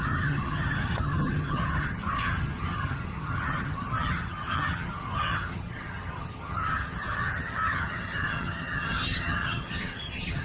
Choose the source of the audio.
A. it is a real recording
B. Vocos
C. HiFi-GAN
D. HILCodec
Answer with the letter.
C